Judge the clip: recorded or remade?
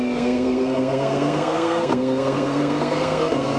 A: remade